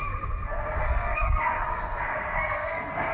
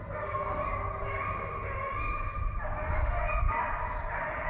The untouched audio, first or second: second